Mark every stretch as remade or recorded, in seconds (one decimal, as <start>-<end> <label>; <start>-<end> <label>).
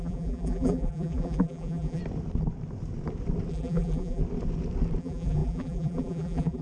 0.0-2.0 remade; 2.0-3.5 recorded; 3.5-4.2 remade; 4.2-5.0 recorded; 5.0-6.6 remade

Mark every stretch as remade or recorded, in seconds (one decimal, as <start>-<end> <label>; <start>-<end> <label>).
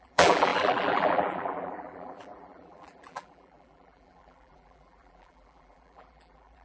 0.0-6.6 remade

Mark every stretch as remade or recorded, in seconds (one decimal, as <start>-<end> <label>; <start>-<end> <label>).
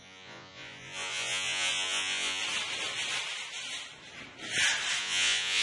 0.0-2.4 remade; 2.4-5.0 recorded; 5.0-5.6 remade